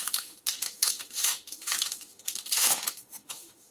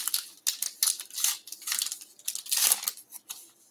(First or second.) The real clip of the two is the second